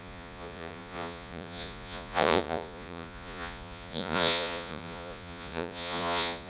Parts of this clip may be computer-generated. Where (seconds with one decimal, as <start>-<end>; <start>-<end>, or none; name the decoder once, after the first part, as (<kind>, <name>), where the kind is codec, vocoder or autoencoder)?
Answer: 0.0-6.5 (vocoder, Vocos)